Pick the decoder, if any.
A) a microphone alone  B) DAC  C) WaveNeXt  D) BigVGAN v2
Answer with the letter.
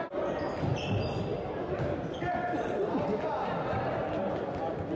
A